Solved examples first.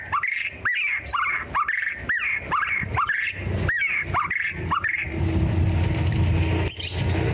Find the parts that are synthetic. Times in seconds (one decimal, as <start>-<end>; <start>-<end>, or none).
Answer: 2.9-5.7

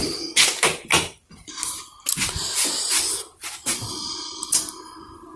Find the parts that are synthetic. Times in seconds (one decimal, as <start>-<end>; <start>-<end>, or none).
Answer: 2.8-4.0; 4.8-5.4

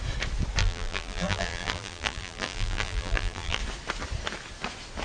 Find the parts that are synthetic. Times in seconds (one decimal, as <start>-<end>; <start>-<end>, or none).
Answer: 0.6-3.6